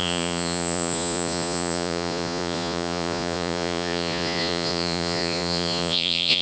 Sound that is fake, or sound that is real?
fake